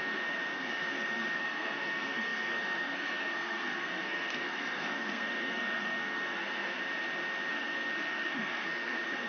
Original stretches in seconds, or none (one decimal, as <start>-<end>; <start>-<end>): 6.8-7.5